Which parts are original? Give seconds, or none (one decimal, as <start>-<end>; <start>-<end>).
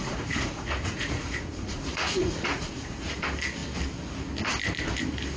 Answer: 3.2-5.4